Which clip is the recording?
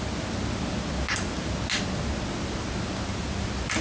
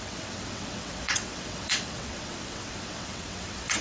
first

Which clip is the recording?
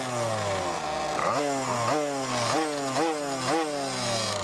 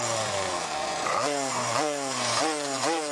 first